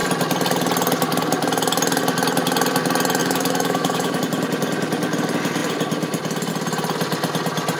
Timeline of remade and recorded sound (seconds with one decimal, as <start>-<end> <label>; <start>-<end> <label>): 0.0-3.2 recorded; 3.2-4.2 remade; 4.2-7.8 recorded